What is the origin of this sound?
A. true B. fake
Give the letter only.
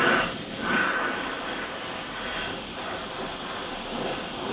A